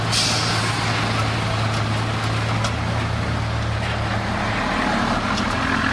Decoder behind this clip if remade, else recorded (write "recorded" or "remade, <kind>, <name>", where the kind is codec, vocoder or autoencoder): recorded